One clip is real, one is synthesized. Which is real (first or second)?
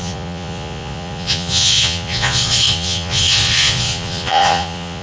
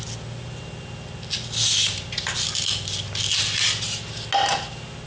second